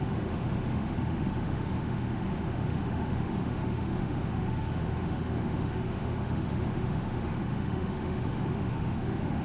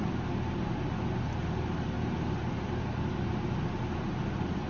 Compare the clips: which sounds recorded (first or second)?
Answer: second